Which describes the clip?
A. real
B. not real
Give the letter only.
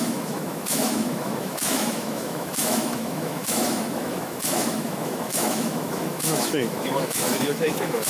B